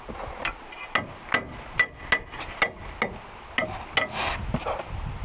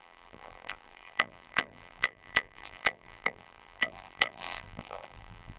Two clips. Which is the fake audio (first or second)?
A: second